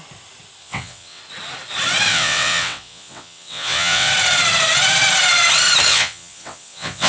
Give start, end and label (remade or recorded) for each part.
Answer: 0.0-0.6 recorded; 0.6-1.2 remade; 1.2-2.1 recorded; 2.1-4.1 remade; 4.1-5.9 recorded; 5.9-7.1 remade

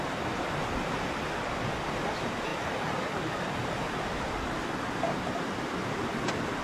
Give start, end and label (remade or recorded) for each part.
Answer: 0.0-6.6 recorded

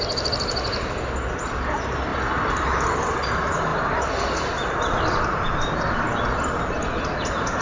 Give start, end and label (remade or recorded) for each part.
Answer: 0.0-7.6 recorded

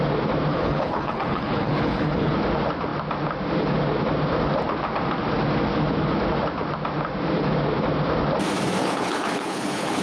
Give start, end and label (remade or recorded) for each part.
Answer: 0.0-0.5 recorded; 0.5-2.3 remade; 2.3-8.8 recorded; 8.8-10.0 remade

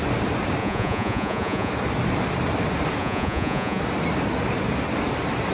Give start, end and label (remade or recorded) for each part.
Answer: 0.0-0.6 recorded; 0.6-1.7 remade; 1.7-3.0 recorded; 3.0-3.8 remade; 3.8-5.5 recorded

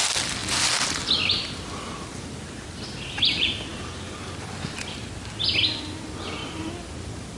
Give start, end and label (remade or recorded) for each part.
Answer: 0.0-7.4 recorded

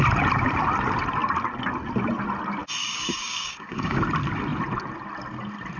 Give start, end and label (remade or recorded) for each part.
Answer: 0.0-2.8 recorded; 2.8-4.0 remade; 4.0-5.8 recorded

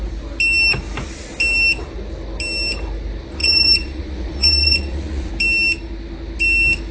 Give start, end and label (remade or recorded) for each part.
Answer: 0.0-3.4 recorded; 3.4-5.3 remade; 5.3-6.9 recorded